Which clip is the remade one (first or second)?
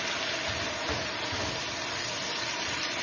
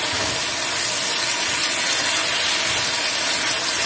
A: first